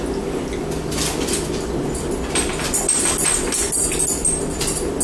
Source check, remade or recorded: recorded